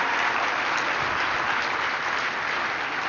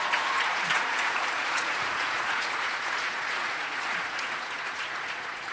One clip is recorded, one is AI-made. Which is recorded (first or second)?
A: first